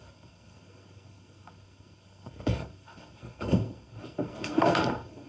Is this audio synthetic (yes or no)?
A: yes